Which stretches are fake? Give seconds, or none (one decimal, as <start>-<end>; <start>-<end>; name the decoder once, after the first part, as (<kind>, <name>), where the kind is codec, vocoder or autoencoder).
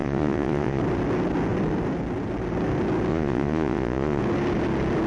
0.0-0.8 (vocoder, Vocos); 3.1-4.2